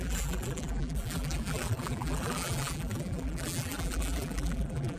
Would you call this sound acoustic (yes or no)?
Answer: no